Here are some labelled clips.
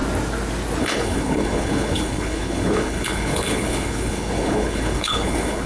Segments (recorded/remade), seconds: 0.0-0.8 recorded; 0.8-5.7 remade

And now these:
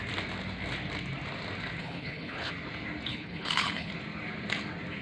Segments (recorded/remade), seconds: 0.0-1.8 recorded; 1.8-2.5 remade; 2.5-3.1 recorded; 3.1-3.9 remade; 3.9-5.0 recorded

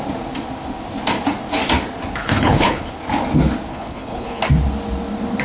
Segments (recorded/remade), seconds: 0.0-2.2 recorded; 2.2-2.9 remade; 2.9-3.7 recorded; 3.7-4.4 remade; 4.4-5.4 recorded

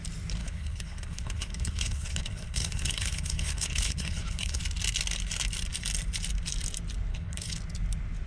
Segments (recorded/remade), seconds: 0.0-0.4 recorded; 0.4-4.6 remade; 4.6-7.1 recorded; 7.1-7.6 remade; 7.6-8.3 recorded